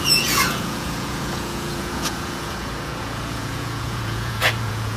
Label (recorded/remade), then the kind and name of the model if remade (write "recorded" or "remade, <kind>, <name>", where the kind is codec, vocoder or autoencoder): remade, vocoder, Vocos